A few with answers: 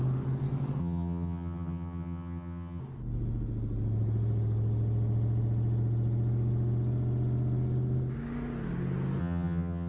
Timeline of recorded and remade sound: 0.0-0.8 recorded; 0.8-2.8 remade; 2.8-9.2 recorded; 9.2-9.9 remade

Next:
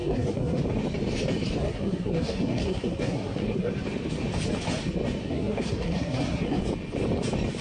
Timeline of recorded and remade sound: 0.0-0.6 remade; 0.6-1.6 recorded; 1.6-3.7 remade; 3.7-5.2 recorded; 5.2-6.6 remade; 6.6-7.6 recorded

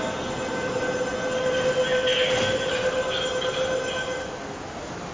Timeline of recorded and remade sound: 0.0-5.1 recorded

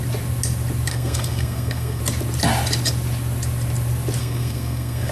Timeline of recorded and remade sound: 0.0-0.9 recorded; 0.9-2.0 remade; 2.0-4.2 recorded; 4.2-5.1 remade

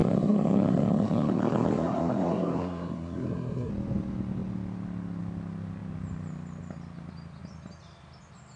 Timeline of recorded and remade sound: 0.0-3.7 remade; 3.7-8.6 recorded

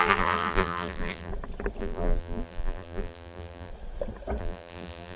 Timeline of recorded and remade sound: 0.0-1.3 remade; 1.3-1.8 recorded; 1.8-3.7 remade; 3.7-4.4 recorded; 4.4-5.2 remade